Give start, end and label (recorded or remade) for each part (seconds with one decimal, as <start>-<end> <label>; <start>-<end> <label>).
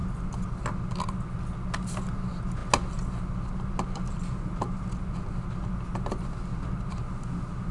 0.0-7.7 recorded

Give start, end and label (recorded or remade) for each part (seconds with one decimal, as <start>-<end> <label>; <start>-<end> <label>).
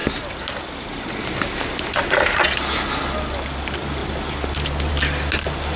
0.0-5.8 recorded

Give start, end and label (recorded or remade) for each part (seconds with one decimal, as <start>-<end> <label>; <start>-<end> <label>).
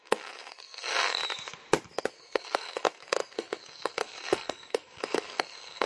0.0-1.2 remade; 1.2-2.0 recorded; 2.0-5.9 remade